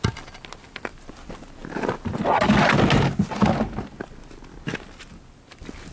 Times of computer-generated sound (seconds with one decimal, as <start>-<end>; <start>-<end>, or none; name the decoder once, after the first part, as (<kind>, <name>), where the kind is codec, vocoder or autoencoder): none